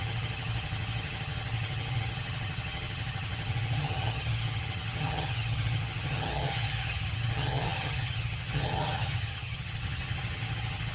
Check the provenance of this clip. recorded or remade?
remade